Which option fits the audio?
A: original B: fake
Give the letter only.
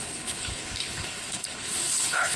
B